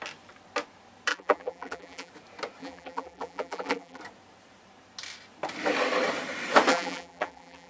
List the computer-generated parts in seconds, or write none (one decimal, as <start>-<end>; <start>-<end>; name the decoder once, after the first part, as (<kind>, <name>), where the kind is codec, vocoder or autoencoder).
1.1-2.1 (vocoder, BigVGAN v2); 2.6-4.0; 6.7-7.7